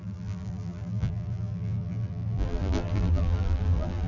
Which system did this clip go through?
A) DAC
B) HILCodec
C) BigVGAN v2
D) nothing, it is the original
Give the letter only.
C